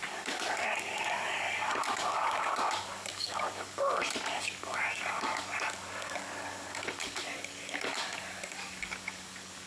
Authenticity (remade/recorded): remade